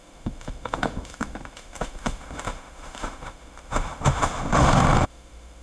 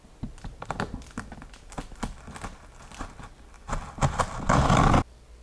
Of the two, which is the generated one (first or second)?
first